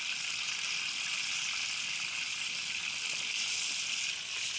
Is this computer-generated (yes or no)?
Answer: no